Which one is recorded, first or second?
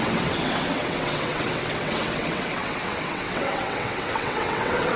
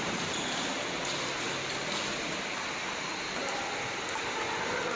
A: second